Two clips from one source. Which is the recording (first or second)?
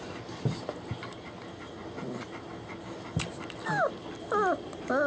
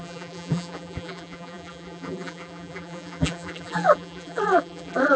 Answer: first